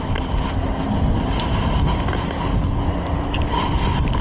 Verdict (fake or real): real